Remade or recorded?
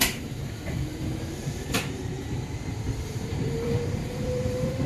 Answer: remade